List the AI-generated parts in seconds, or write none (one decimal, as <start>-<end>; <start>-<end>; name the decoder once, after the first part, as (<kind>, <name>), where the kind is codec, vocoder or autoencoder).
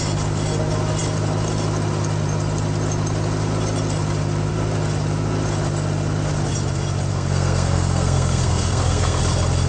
7.1-9.2 (codec, SNAC)